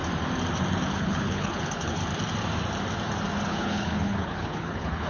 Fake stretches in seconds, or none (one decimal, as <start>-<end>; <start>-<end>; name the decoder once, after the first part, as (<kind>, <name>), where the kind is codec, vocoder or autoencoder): 0.9-2.0 (codec, HILCodec); 3.4-5.1